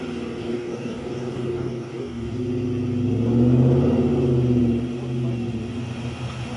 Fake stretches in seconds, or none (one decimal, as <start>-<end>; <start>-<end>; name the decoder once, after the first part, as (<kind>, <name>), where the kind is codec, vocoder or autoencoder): 0.4-2.4 (codec, DAC)